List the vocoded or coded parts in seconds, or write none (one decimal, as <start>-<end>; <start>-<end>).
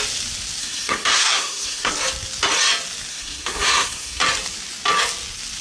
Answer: 0.6-1.9; 3.1-4.2